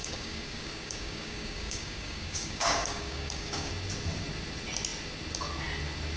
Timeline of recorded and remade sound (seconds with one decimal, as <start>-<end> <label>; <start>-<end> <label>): 0.0-3.7 remade; 3.7-6.2 recorded